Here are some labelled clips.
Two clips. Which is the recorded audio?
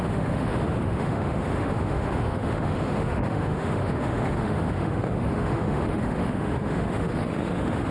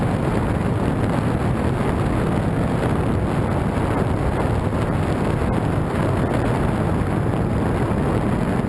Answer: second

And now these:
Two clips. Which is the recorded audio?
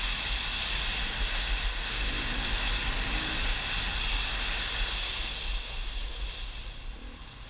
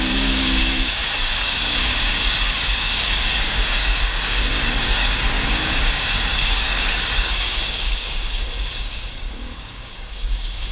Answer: first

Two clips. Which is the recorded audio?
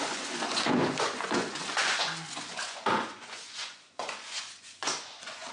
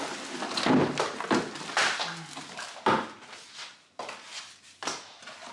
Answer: second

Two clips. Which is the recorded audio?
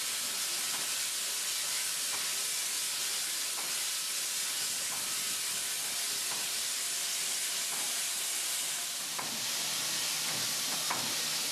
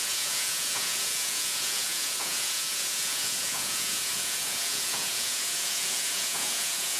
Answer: first